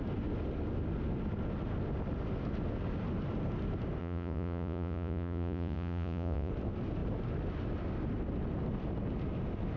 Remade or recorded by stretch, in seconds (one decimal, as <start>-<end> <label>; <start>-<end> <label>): 0.0-4.0 recorded; 4.0-6.5 remade; 6.5-9.8 recorded